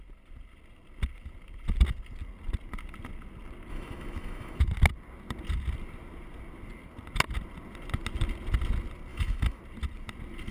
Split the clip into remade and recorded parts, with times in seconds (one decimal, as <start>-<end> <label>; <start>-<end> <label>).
0.0-3.7 recorded; 3.7-4.6 remade; 4.6-9.1 recorded; 9.1-9.6 remade; 9.6-10.5 recorded